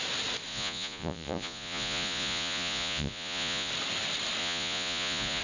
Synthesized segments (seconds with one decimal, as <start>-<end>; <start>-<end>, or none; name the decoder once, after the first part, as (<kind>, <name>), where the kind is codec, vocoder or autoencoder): 0.5-3.7 (vocoder, Vocos); 4.4-5.4